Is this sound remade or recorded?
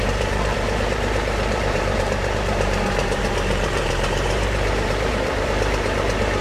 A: remade